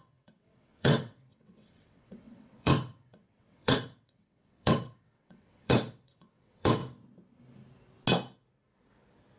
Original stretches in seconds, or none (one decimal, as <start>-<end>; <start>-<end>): 6.8-9.4